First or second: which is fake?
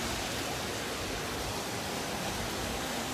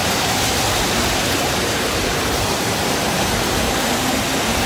second